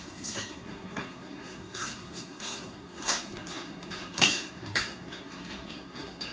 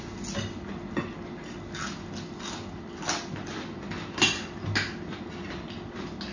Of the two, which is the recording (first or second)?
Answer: second